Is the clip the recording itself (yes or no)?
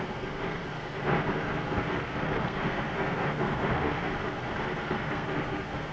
no